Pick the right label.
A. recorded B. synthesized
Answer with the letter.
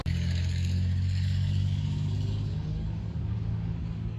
B